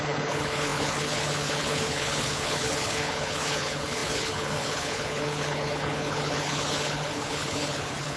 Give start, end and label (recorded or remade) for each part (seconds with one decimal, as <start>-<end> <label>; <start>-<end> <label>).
0.0-8.2 remade